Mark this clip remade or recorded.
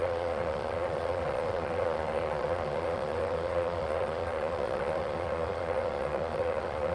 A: remade